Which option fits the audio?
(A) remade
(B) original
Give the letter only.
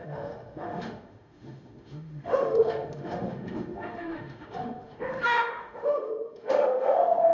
A